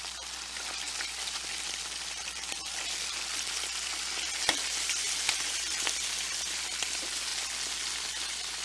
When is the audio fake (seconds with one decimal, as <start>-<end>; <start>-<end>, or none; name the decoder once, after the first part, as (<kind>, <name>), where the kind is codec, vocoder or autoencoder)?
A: 0.0-7.3 (vocoder, BigVGAN v2); 8.1-8.6